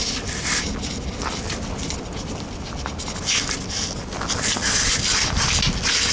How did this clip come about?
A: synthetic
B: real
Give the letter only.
B